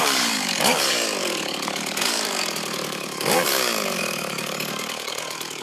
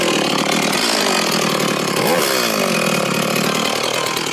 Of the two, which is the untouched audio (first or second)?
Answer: second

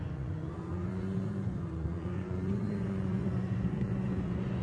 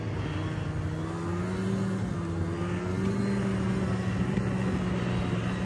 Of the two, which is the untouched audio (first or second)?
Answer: second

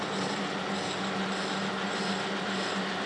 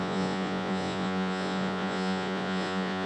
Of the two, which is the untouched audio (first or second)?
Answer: first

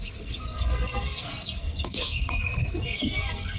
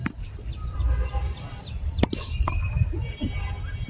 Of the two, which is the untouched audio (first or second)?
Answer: second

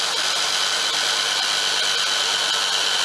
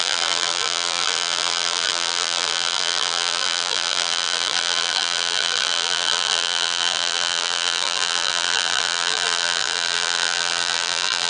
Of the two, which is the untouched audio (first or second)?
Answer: first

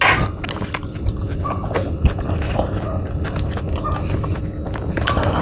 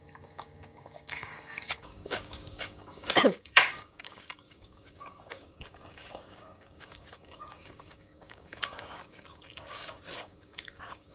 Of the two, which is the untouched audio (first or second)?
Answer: first